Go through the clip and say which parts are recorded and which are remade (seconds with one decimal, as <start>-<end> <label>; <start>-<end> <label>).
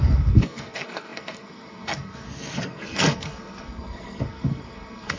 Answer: 0.0-5.2 remade